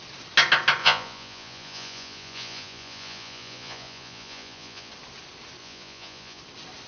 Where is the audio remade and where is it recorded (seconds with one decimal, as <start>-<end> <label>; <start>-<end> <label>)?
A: 0.0-0.8 recorded; 0.8-4.9 remade; 4.9-5.6 recorded; 5.6-6.4 remade; 6.4-6.9 recorded